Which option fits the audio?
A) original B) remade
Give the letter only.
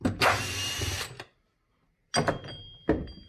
A